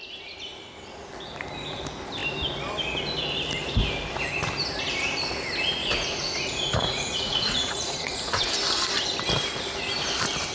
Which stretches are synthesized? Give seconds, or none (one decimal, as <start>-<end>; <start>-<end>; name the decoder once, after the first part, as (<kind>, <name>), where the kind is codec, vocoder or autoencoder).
5.8-8.5 (vocoder, Vocos)

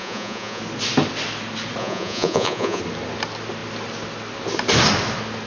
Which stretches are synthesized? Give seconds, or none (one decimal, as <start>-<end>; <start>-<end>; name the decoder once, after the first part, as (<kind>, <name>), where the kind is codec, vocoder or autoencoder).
0.0-0.6 (vocoder, Vocos); 1.8-2.8

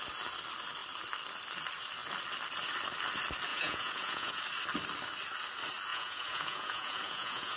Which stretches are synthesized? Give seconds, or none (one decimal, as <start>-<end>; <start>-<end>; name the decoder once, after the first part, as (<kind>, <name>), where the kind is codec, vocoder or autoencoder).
3.5-4.4 (vocoder, Vocos); 5.9-7.6

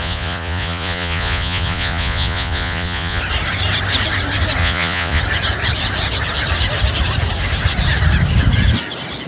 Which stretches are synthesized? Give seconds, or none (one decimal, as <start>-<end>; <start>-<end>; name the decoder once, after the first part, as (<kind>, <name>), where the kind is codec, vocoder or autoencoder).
0.0-3.2 (vocoder, Vocos); 4.6-5.2

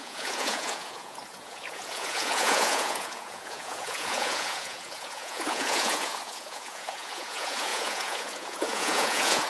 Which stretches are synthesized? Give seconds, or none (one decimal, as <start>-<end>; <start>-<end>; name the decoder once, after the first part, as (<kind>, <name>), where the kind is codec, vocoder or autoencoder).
0.0-9.5 (vocoder, Vocos)